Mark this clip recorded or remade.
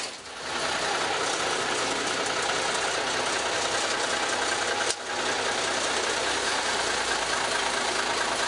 recorded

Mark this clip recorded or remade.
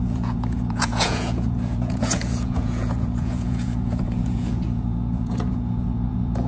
remade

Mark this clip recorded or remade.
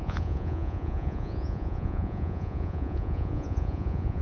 remade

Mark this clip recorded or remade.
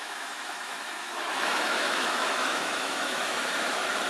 remade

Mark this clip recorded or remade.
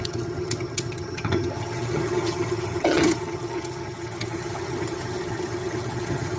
remade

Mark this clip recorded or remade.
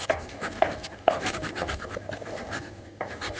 remade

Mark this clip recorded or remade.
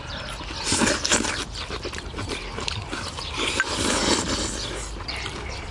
remade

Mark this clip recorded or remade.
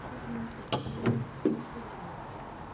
recorded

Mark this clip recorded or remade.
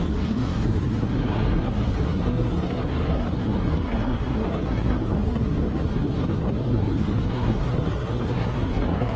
remade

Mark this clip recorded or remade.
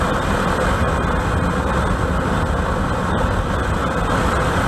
recorded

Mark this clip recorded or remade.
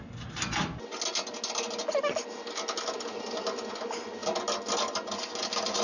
recorded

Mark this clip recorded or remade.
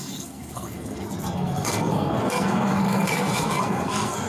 remade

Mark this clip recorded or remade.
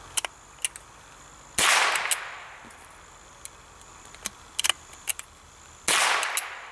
recorded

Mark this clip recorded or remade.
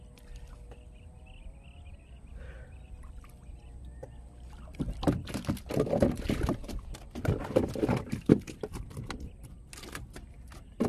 remade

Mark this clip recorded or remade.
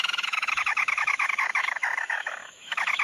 remade